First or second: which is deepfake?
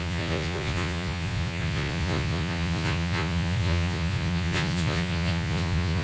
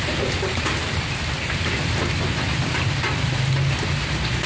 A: first